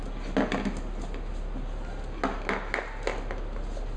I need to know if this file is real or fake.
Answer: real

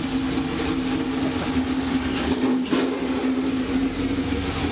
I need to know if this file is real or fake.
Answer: real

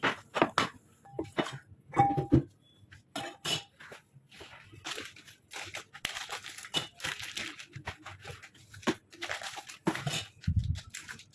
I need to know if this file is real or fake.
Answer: real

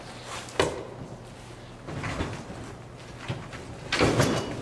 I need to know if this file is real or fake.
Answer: real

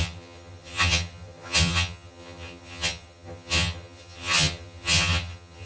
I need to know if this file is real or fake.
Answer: fake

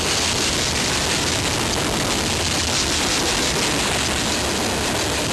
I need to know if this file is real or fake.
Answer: real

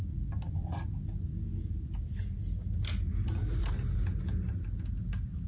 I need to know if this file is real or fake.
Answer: real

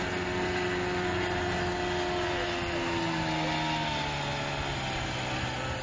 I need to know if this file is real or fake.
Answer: real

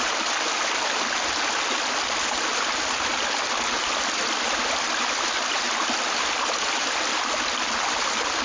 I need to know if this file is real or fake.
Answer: real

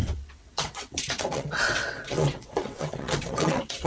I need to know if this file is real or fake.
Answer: fake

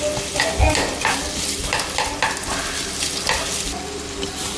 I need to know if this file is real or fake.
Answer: real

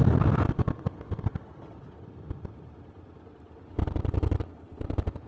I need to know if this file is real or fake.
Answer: real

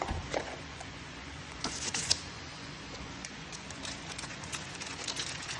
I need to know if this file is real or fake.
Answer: fake